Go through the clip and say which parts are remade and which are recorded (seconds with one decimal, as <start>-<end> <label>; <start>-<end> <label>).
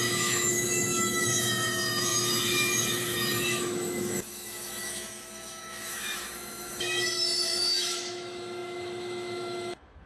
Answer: 0.0-10.1 remade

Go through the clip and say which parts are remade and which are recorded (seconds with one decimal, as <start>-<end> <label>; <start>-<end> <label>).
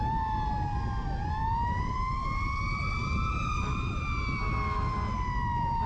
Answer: 0.0-5.9 recorded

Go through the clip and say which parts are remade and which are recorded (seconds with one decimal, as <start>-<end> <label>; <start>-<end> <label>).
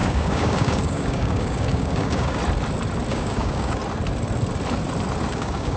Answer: 0.0-2.4 remade; 2.4-3.1 recorded; 3.1-3.8 remade; 3.8-5.3 recorded; 5.3-5.8 remade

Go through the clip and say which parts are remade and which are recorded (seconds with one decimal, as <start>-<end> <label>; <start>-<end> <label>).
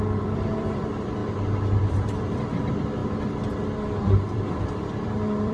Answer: 0.0-1.2 remade; 1.2-1.8 recorded; 1.8-3.0 remade; 3.0-4.0 recorded; 4.0-5.5 remade